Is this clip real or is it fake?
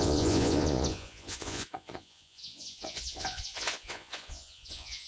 fake